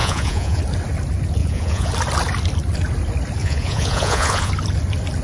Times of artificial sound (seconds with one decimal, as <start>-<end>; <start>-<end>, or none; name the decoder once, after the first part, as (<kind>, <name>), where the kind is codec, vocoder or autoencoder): 0.0-0.6 (vocoder, Vocos); 1.4-1.9; 3.4-4.5